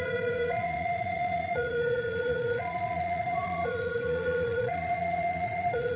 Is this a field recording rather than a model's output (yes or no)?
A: no